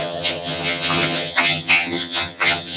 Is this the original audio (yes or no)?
no